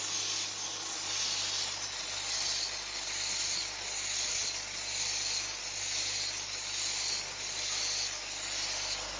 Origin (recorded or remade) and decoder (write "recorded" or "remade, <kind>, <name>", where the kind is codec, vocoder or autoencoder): recorded